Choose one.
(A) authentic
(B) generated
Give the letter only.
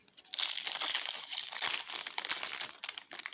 A